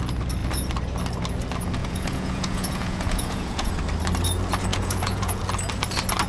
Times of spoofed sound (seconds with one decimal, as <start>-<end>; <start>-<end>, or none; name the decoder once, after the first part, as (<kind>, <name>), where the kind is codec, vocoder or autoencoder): 1.8-3.7 (vocoder, Vocos); 4.7-5.4